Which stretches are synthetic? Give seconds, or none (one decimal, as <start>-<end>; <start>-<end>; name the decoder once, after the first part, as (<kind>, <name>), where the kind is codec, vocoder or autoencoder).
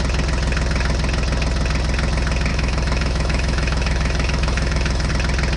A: 2.5-5.1 (autoencoder, DAC-VAE)